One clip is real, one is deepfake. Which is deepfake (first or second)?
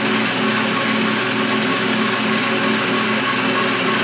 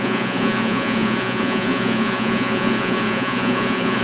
second